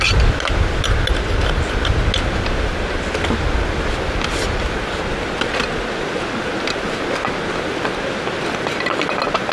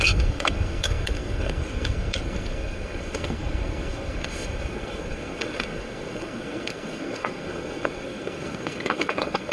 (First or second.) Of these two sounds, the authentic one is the first